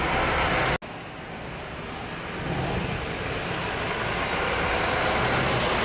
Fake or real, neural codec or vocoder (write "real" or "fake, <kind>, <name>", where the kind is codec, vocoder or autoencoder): real